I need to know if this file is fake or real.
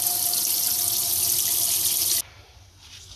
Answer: real